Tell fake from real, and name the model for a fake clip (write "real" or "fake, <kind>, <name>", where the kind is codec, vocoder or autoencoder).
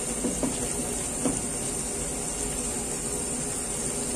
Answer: real